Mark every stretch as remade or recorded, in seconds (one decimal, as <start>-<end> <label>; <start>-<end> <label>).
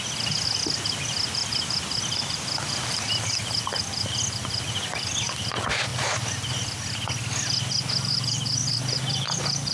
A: 0.0-9.7 recorded